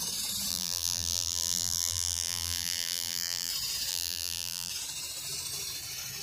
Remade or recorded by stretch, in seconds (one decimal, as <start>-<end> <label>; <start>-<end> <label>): 0.0-0.5 recorded; 0.5-3.5 remade; 3.5-3.9 recorded; 3.9-4.7 remade; 4.7-6.2 recorded